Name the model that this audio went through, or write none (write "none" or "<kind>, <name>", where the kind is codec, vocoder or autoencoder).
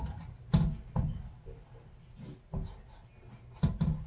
none